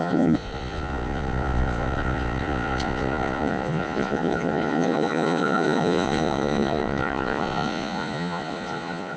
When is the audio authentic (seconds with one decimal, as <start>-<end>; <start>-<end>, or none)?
none